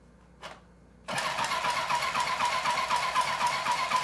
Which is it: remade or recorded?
recorded